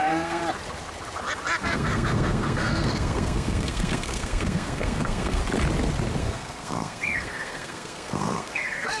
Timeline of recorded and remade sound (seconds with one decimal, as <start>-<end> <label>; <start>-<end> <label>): 0.0-0.4 remade; 0.4-1.6 recorded; 1.6-5.4 remade; 5.4-6.2 recorded; 6.2-9.0 remade